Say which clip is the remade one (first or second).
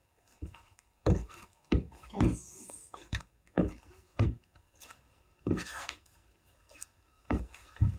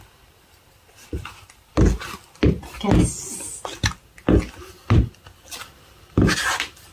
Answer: first